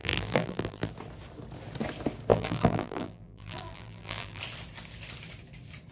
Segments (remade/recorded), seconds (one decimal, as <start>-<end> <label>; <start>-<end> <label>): 0.0-0.9 remade; 0.9-2.3 recorded; 2.3-4.4 remade; 4.4-5.9 recorded